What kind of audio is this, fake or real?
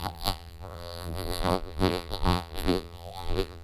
fake